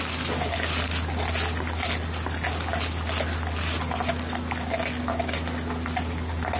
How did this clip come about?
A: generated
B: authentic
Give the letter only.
B